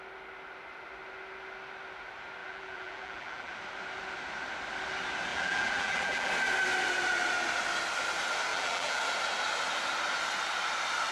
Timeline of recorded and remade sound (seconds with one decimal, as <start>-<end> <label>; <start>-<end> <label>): 0.0-2.4 recorded; 2.4-3.5 remade; 3.5-5.3 recorded; 5.3-6.3 remade; 6.3-8.5 recorded; 8.5-9.0 remade; 9.0-11.1 recorded